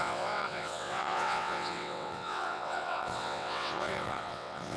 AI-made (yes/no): yes